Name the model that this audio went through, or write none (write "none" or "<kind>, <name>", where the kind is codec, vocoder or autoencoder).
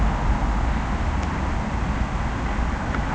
none